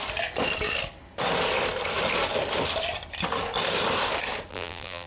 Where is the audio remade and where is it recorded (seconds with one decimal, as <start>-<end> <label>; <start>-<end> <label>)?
0.0-4.5 recorded; 4.5-5.1 remade